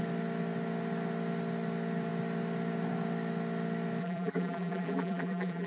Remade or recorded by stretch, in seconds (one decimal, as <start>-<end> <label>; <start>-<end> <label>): 0.0-4.0 recorded; 4.0-5.7 remade